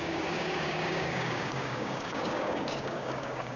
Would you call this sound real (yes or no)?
no